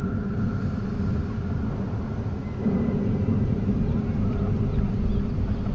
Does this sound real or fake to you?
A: real